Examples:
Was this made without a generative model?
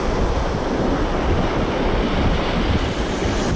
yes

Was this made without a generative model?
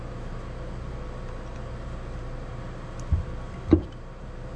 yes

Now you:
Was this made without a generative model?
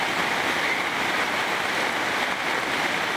yes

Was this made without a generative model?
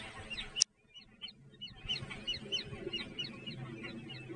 yes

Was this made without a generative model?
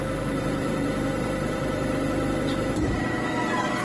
no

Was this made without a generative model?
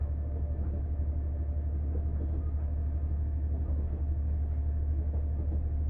yes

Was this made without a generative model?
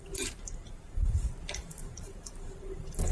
no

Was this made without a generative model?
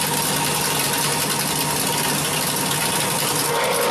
yes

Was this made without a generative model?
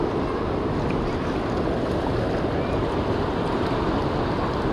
yes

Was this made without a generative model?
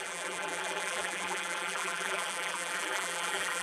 no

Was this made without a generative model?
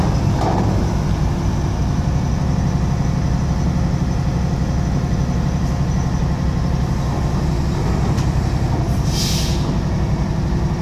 yes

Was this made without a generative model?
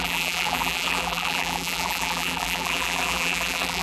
no